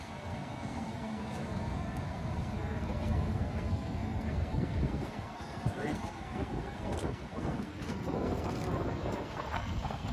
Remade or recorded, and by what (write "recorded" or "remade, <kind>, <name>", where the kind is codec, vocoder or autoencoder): remade, codec, SNAC